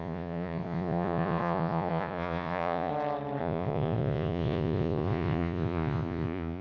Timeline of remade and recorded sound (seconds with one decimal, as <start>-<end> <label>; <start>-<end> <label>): 0.0-2.9 remade; 2.9-3.4 recorded; 3.4-6.6 remade